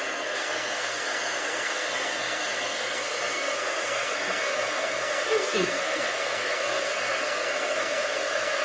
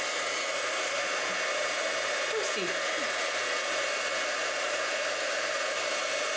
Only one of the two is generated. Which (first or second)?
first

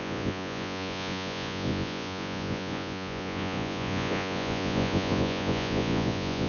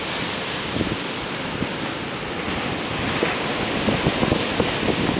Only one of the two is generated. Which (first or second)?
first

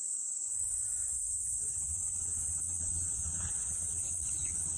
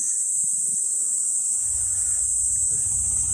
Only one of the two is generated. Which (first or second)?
first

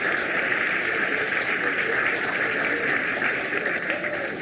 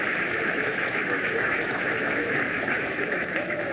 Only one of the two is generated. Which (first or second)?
second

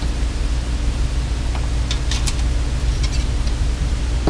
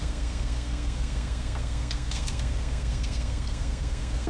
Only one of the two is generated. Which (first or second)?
second